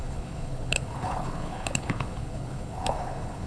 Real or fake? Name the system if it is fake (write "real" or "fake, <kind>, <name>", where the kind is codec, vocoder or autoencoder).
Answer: fake, codec, HILCodec